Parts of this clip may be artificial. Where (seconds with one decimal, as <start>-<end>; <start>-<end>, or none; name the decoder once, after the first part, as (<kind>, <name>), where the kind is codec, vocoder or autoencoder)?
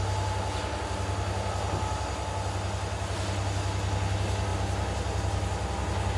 none